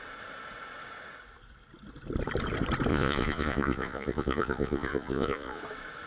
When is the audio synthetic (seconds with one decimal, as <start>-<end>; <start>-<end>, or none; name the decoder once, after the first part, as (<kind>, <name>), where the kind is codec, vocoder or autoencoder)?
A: 2.9-5.6 (vocoder, Vocos)